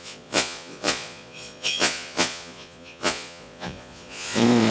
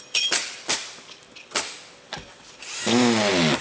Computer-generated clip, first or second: first